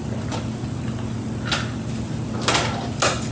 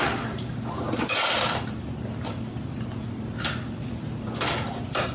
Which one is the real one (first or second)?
first